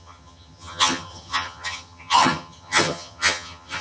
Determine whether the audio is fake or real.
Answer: fake